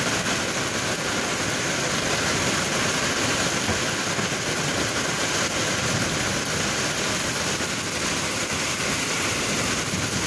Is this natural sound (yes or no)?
yes